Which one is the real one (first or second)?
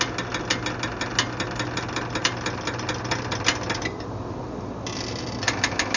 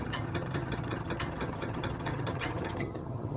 first